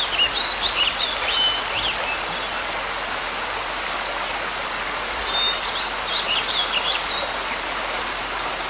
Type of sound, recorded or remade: recorded